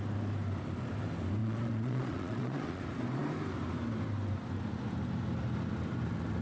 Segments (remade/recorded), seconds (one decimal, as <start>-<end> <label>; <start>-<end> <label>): 0.0-1.4 recorded; 1.4-2.8 remade; 2.8-6.4 recorded